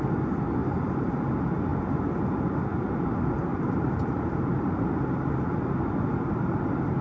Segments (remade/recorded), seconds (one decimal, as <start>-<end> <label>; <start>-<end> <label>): 0.0-0.6 recorded; 0.6-1.2 remade; 1.2-3.5 recorded; 3.5-4.7 remade; 4.7-7.0 recorded